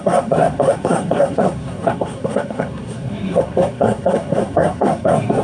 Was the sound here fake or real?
fake